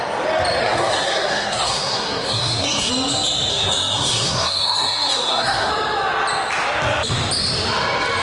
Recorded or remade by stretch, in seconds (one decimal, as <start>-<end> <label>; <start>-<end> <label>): 0.0-0.6 recorded; 0.6-2.9 remade; 2.9-3.5 recorded; 3.5-5.7 remade; 5.7-8.2 recorded